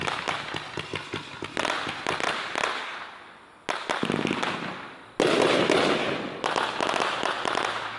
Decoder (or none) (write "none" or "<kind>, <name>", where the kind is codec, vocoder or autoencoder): none